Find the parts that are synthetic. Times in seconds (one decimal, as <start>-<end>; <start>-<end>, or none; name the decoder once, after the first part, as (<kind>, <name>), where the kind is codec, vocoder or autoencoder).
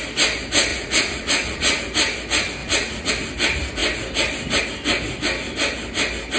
0.7-1.8 (vocoder, Vocos); 2.6-3.1